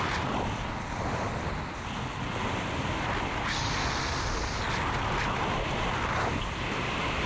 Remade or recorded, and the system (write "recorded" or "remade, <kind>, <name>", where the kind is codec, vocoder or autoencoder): recorded